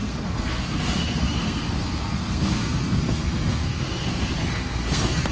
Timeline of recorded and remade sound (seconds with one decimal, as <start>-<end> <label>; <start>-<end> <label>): 0.0-5.3 remade